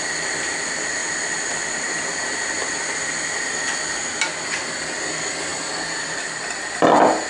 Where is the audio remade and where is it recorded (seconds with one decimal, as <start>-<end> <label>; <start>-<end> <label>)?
0.0-7.3 recorded